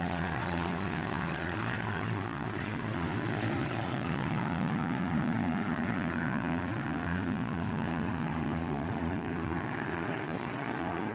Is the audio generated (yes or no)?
yes